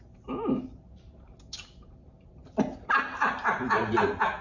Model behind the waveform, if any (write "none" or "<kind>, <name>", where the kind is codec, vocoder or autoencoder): none